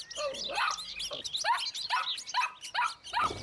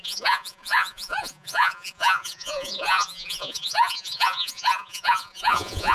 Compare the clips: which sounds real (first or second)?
first